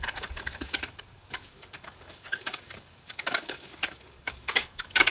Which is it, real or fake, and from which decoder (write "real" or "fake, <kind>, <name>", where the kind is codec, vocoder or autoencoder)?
fake, codec, DAC